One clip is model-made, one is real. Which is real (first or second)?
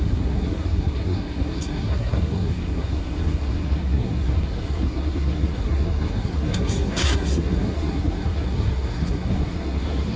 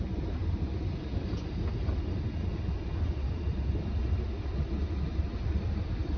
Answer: second